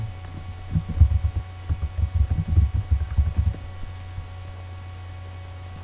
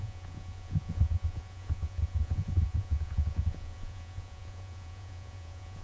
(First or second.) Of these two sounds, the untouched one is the first